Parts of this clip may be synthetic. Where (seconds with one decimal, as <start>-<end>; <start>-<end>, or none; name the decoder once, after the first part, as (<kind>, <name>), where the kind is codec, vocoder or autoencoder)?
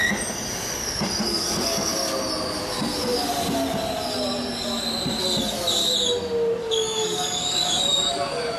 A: 1.2-1.9 (codec, DAC); 6.6-8.6